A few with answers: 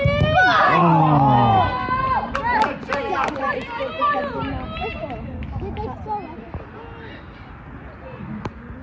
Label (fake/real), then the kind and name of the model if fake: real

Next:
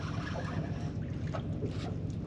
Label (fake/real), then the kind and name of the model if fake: real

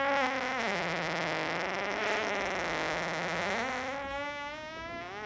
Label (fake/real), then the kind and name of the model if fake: real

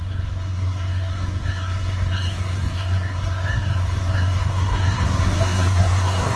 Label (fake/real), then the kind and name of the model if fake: fake, codec, SNAC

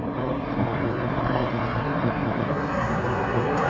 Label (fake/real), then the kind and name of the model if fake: fake, codec, SNAC